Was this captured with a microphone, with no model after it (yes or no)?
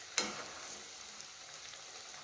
yes